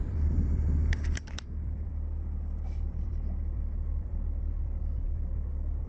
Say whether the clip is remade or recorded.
remade